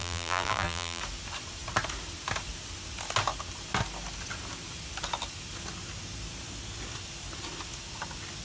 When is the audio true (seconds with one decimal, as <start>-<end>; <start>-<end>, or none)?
1.0-8.4